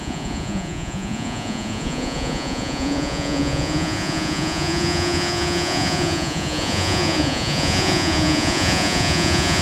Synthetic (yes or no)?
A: yes